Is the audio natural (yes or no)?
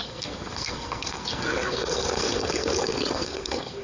no